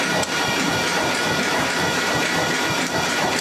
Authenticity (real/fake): fake